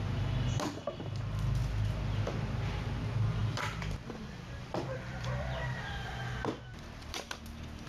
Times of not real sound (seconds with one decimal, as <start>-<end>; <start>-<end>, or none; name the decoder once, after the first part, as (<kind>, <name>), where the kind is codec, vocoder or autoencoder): 3.4-6.1 (vocoder, BigVGAN v2); 6.7-7.4